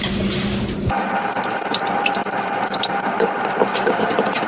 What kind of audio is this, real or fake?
fake